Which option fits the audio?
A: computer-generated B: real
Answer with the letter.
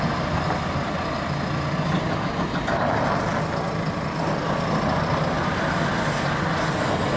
B